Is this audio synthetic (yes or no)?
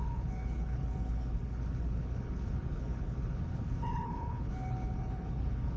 yes